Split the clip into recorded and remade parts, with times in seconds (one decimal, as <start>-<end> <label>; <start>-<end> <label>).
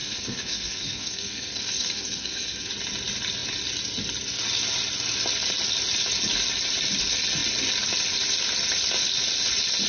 0.0-2.7 remade; 2.7-9.9 recorded